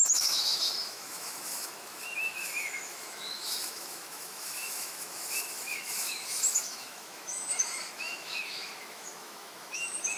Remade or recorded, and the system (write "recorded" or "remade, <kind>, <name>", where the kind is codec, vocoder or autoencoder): remade, autoencoder, DAC-VAE